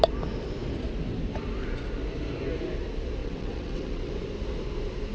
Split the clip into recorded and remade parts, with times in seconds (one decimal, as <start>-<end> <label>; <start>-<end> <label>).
0.0-3.2 recorded; 3.2-4.1 remade; 4.1-5.1 recorded